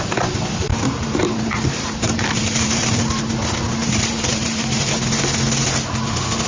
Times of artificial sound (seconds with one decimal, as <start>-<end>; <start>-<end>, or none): 0.6-3.1; 3.8-4.9